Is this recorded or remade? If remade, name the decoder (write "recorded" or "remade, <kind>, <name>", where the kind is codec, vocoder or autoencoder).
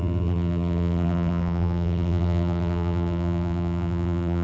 remade, vocoder, BigVGAN v2